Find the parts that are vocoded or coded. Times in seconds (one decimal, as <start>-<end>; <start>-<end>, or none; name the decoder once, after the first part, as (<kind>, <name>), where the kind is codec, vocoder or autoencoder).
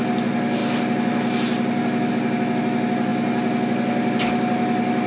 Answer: none